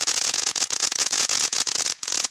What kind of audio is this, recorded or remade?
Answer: remade